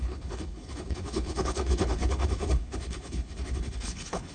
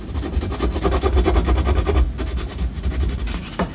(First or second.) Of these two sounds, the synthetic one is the first